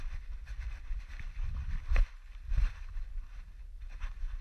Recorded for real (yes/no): no